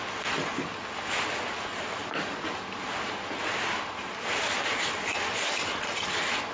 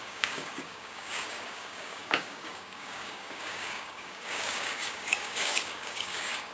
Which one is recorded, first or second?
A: first